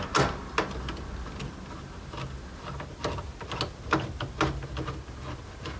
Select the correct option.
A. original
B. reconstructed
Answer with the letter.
A